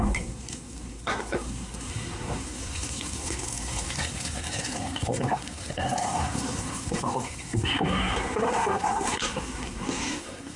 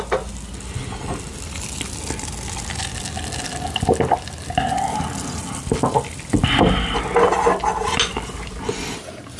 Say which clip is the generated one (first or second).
first